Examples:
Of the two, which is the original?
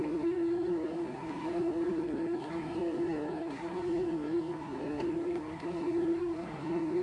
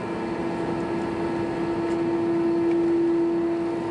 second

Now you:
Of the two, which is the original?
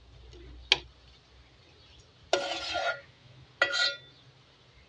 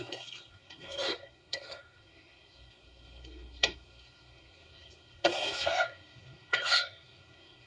first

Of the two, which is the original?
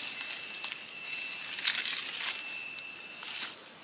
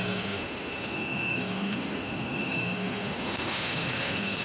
first